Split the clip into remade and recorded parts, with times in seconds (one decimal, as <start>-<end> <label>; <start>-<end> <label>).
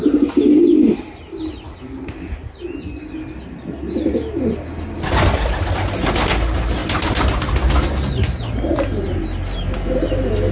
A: 0.0-10.5 recorded